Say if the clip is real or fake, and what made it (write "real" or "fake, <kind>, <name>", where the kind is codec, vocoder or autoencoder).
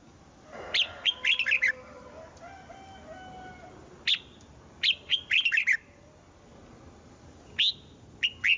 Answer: real